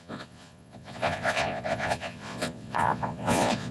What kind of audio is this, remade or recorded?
remade